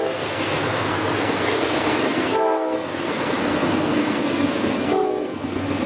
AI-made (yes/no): yes